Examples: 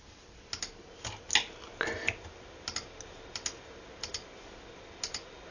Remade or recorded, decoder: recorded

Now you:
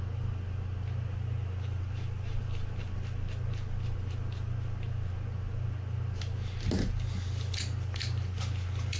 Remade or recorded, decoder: recorded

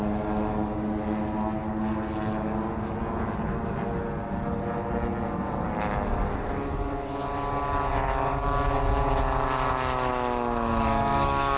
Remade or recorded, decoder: recorded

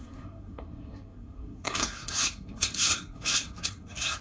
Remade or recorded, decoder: remade, codec, SNAC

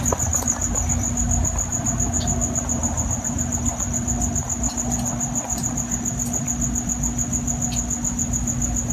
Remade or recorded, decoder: recorded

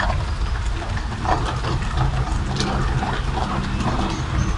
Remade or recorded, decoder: recorded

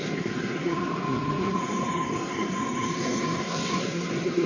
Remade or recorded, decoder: remade, codec, SNAC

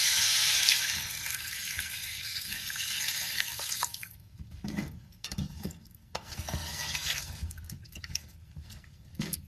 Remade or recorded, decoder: remade, codec, SNAC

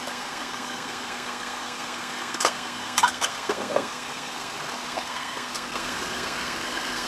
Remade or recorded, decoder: remade, codec, SNAC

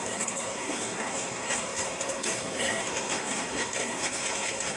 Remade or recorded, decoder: remade, codec, SNAC